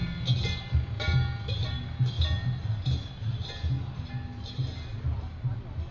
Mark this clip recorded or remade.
recorded